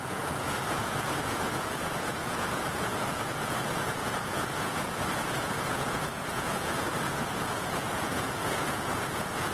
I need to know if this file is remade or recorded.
remade